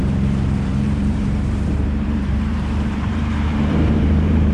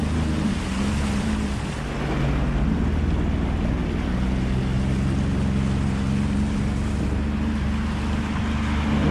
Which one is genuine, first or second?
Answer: second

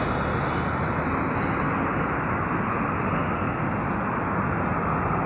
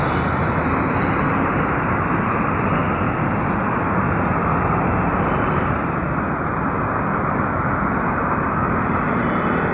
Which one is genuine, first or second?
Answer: first